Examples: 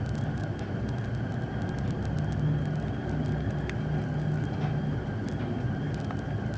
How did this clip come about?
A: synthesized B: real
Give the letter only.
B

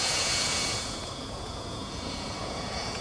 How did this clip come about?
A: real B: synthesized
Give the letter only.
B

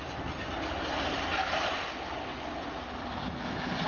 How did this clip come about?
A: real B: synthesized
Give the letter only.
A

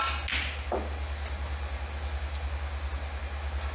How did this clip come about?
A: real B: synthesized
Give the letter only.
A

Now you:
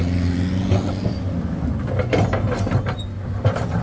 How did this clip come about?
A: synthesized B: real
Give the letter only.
B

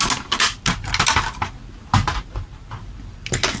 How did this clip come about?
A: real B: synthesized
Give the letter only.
A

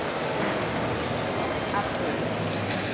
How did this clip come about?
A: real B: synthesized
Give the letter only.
A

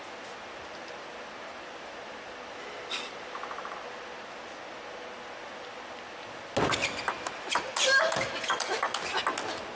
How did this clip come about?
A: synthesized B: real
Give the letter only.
B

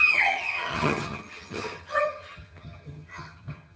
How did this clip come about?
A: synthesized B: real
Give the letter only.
A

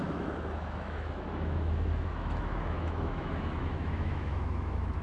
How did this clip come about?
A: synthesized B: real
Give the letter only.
A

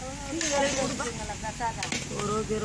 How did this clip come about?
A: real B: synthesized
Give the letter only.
A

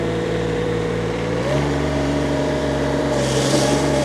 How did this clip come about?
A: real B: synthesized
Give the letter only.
B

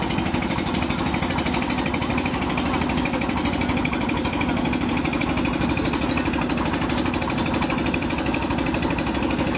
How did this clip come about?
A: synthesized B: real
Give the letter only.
B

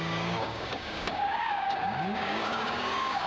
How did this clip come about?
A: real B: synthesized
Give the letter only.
B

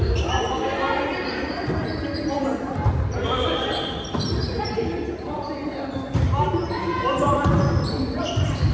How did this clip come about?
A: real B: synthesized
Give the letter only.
A